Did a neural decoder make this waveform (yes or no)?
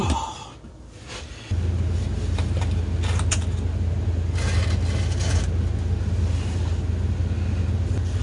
no